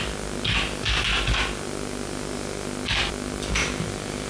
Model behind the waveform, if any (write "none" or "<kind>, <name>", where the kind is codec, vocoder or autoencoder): none